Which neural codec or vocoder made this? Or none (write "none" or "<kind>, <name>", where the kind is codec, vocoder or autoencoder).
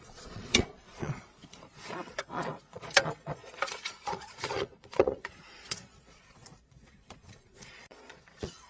vocoder, Vocos